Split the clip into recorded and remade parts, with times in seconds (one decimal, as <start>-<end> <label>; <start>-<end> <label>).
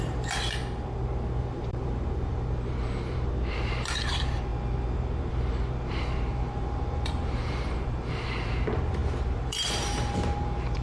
0.0-0.6 remade; 0.6-1.4 recorded; 1.4-4.5 remade; 4.5-5.3 recorded; 5.3-10.8 remade